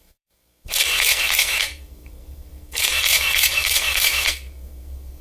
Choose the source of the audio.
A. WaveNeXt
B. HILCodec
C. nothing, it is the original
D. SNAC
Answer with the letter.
D